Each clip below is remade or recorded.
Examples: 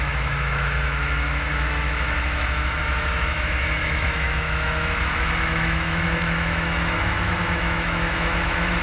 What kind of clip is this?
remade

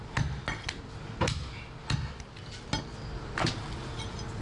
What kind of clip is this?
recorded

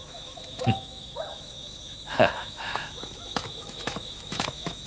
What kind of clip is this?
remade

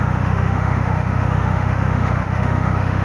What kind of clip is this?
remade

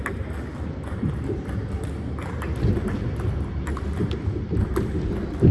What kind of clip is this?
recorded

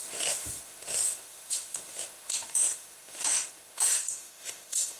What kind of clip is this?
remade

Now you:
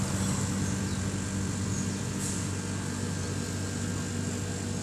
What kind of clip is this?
recorded